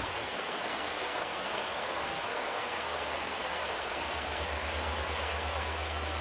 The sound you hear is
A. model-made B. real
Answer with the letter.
A